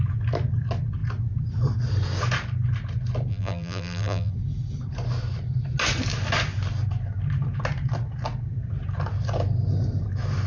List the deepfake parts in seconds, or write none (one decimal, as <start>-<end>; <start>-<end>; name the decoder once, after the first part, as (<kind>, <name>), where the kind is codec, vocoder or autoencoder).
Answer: 3.3-4.3 (vocoder, BigVGAN v2)